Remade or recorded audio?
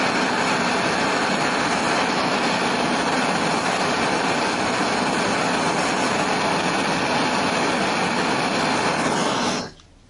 recorded